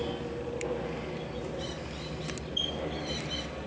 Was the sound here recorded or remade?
recorded